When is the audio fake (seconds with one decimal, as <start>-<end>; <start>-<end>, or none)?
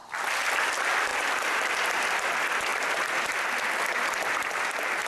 none